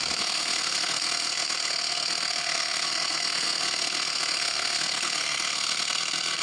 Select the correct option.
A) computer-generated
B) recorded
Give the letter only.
A